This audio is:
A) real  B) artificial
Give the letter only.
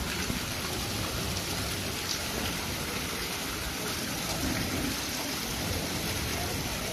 B